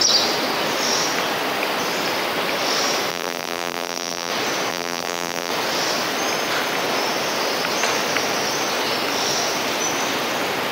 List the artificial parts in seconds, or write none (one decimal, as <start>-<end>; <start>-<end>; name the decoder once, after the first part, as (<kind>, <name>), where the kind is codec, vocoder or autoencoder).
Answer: 3.1-4.3 (vocoder, BigVGAN v2); 4.7-5.5